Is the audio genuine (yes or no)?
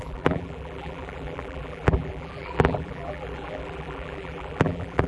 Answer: no